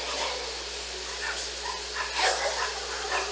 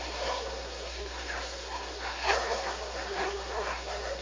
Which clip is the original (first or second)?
first